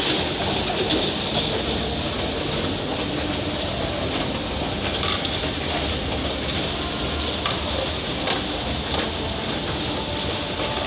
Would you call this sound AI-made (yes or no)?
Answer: no